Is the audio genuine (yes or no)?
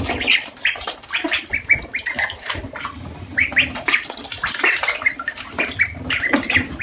no